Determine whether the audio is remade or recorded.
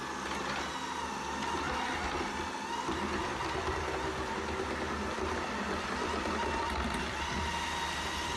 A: recorded